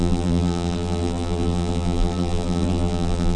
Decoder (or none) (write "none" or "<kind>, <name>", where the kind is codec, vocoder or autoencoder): vocoder, BigVGAN v2